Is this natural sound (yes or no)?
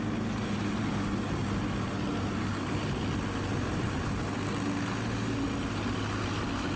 yes